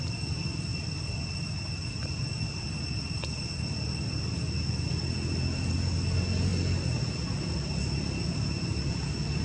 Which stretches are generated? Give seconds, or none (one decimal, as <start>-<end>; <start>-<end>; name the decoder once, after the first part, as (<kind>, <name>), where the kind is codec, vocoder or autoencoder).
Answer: none